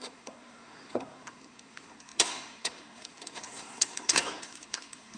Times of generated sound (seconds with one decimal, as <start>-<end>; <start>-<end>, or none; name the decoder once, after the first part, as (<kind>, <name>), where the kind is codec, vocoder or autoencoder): 0.0-5.2 (codec, SNAC)